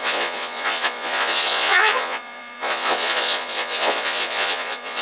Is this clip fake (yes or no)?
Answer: yes